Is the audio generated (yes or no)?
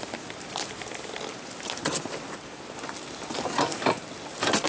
no